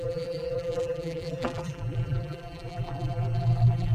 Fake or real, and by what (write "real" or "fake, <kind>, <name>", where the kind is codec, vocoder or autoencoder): fake, vocoder, BigVGAN v2